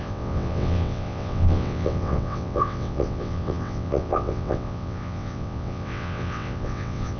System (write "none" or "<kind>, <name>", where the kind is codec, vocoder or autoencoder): vocoder, WaveNeXt